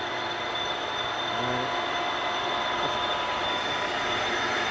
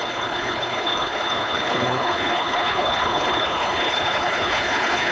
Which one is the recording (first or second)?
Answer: first